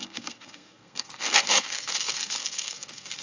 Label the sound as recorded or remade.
remade